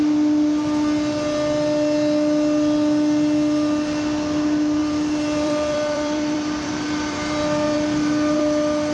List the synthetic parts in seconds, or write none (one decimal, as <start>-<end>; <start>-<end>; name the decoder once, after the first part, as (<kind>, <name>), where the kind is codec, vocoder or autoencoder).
4.8-8.4 (vocoder, BigVGAN v2)